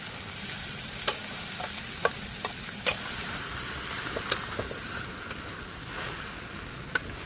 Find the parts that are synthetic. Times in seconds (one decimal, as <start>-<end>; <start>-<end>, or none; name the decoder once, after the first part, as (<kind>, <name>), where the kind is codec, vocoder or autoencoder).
none